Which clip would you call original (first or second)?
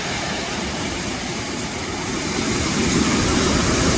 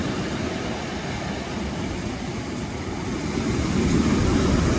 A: second